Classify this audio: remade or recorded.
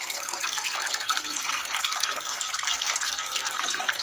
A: remade